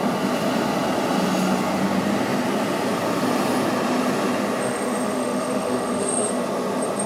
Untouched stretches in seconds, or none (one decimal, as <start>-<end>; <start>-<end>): 0.0-4.6; 6.3-7.1